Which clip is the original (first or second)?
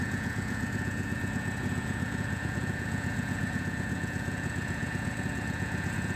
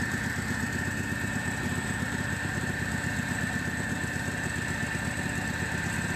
second